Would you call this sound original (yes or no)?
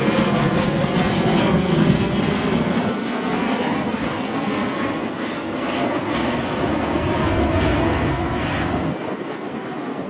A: no